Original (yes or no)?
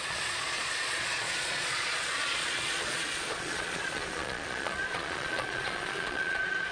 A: no